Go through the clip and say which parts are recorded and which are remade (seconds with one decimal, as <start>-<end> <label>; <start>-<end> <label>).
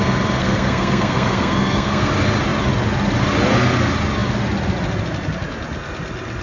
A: 0.0-0.4 recorded; 0.4-2.1 remade; 2.1-6.4 recorded